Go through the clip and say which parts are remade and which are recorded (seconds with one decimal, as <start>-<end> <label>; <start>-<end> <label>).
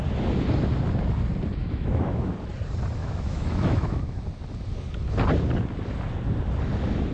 0.0-1.6 recorded; 1.6-2.3 remade; 2.3-3.0 recorded; 3.0-4.2 remade; 4.2-7.1 recorded